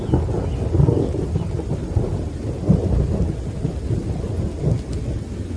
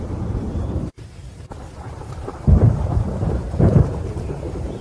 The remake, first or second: second